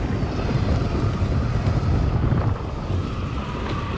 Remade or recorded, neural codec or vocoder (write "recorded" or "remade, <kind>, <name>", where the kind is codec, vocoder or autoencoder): recorded